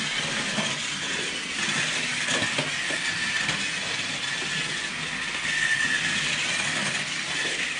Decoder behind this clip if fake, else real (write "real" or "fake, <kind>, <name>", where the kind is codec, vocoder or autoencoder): real